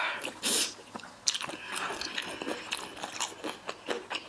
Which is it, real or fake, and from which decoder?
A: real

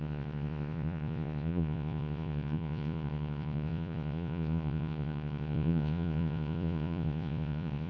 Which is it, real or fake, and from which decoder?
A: fake, vocoder, Vocos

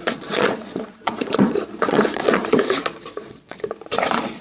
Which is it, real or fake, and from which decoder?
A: fake, vocoder, Vocos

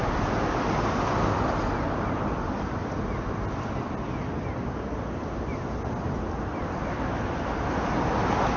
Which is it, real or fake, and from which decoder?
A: real